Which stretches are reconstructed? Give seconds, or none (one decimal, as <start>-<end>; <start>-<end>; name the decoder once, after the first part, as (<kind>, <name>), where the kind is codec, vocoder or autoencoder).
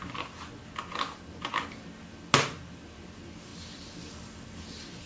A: none